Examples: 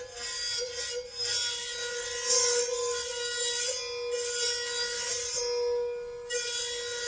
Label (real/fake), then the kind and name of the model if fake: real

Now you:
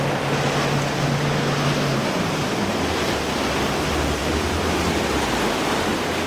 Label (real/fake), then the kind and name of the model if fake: real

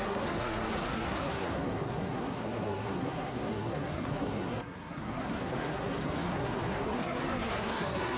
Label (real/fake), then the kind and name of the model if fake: fake, codec, SNAC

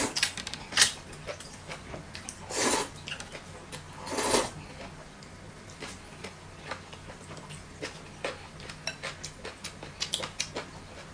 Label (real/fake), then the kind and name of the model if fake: real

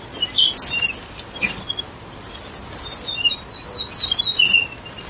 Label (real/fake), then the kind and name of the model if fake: real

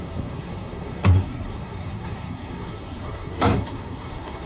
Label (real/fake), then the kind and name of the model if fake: fake, codec, SNAC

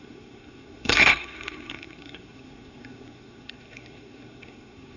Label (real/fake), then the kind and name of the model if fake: fake, codec, SNAC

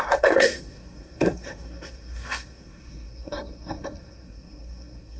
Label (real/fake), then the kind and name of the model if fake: fake, codec, SNAC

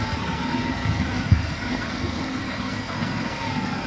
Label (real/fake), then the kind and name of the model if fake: fake, codec, SNAC